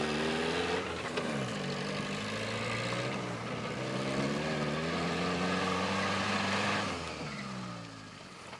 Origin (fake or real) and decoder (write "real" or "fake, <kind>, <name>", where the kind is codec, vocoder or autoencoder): real